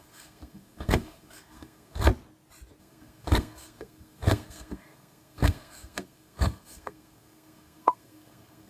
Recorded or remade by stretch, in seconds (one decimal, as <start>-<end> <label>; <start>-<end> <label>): 0.0-2.1 remade; 2.1-2.8 recorded; 2.8-8.7 remade